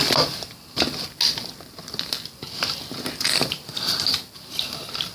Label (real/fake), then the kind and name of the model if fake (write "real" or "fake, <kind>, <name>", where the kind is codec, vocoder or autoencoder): real